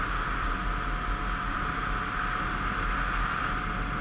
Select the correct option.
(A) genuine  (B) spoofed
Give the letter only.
A